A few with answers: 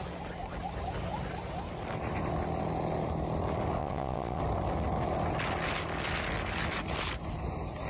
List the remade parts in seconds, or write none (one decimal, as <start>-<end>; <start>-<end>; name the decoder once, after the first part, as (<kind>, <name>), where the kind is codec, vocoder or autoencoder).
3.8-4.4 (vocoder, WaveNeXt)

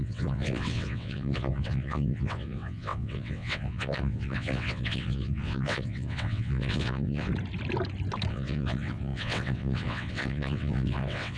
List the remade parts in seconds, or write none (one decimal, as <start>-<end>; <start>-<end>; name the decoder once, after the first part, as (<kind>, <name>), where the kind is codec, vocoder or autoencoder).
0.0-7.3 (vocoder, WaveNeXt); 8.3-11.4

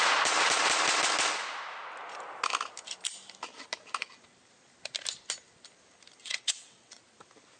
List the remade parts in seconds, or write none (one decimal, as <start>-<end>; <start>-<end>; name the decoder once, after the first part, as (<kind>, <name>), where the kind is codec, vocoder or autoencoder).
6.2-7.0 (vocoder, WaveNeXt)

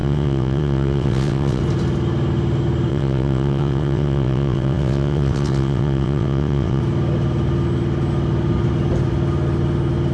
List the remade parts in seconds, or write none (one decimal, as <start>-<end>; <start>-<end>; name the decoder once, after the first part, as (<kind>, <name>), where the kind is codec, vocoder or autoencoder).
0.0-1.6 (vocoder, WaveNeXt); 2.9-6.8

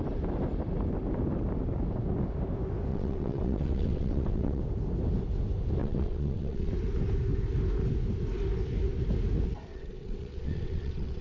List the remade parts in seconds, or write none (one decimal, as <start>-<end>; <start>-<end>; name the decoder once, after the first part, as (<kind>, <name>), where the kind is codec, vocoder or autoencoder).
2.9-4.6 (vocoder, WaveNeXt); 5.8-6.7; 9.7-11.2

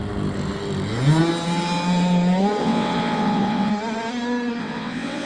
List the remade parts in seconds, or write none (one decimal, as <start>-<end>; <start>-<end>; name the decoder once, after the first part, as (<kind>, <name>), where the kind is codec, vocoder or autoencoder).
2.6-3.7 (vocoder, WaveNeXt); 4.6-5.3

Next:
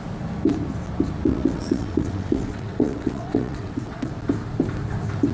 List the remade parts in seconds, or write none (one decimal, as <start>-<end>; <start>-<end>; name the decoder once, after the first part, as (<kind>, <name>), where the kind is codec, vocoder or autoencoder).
1.3-4.1 (vocoder, WaveNeXt)